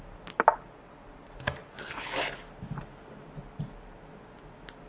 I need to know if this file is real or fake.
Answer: real